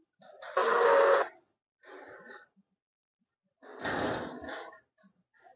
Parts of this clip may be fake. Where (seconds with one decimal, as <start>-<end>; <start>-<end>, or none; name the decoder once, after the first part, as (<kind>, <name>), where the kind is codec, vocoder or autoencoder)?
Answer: none